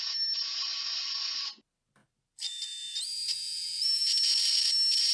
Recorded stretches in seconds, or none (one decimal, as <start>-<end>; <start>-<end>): 0.0-2.0; 3.8-5.1